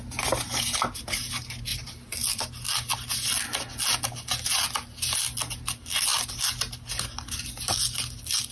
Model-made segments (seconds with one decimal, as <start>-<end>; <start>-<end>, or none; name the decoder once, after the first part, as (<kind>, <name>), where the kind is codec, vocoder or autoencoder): 1.7-2.4 (vocoder, BigVGAN v2)

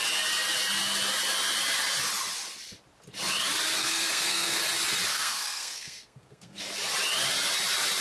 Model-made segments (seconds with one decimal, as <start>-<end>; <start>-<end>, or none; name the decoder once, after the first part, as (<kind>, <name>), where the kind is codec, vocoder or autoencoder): 3.8-4.6 (codec, SNAC); 5.1-6.6

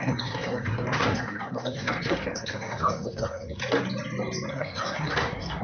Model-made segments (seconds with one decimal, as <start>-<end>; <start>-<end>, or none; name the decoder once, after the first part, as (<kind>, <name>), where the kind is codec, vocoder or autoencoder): 0.0-3.6 (codec, SNAC); 4.5-5.6

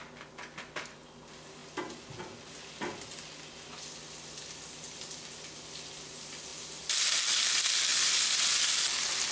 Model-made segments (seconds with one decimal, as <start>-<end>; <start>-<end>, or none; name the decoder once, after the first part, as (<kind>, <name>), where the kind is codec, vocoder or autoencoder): none

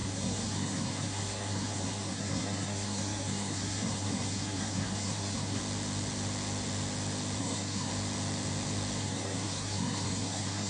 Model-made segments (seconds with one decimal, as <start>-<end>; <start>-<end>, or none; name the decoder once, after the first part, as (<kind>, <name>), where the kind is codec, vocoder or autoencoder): 0.0-5.6 (codec, SNAC); 7.4-7.9; 9.0-10.7

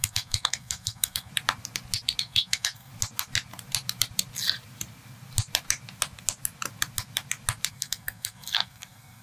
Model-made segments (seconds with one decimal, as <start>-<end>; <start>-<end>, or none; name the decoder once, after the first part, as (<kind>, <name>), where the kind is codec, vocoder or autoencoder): 0.0-1.3 (codec, SNAC); 2.2-2.9; 7.7-9.2

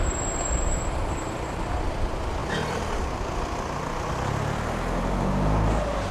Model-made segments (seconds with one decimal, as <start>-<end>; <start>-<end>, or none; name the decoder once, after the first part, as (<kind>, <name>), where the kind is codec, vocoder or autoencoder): none